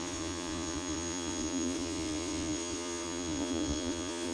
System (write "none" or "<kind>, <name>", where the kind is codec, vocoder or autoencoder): vocoder, Vocos